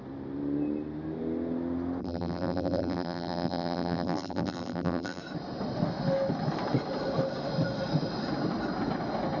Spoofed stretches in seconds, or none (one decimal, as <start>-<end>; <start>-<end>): 2.0-5.2